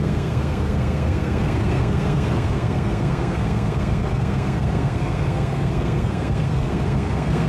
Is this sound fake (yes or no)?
yes